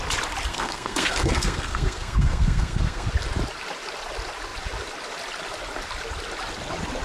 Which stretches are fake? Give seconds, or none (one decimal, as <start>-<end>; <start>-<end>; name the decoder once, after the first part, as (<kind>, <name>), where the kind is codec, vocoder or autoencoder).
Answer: 0.5-3.1 (codec, SNAC)